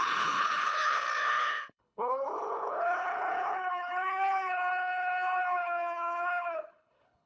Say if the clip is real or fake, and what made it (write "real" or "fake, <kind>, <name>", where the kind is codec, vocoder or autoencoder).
fake, codec, HILCodec